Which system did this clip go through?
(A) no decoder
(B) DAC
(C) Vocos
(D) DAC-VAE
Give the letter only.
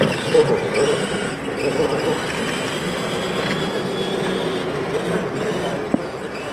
A